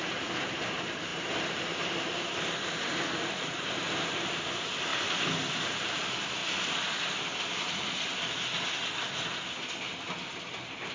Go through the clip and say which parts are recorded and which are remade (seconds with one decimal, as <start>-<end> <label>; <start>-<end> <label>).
0.0-4.9 remade; 4.9-5.7 recorded; 5.7-6.4 remade; 6.4-10.4 recorded; 10.4-10.9 remade